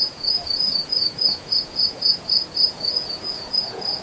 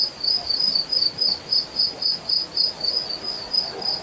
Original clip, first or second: second